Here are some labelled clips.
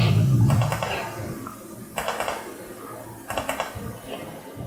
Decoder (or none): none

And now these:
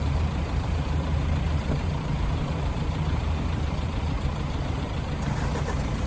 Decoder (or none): vocoder, BigVGAN v2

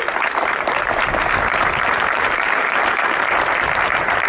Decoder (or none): vocoder, BigVGAN v2